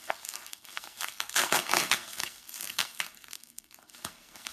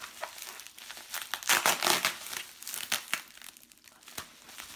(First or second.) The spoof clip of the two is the first